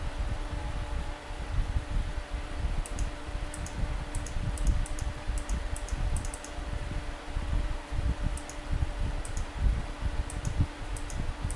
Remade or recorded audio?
remade